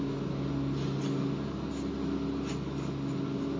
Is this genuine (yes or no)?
yes